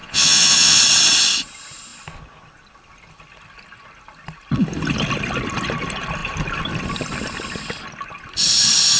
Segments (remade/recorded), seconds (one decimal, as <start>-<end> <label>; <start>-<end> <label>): 0.0-0.8 remade; 0.8-9.0 recorded